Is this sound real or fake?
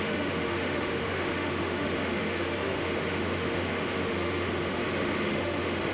fake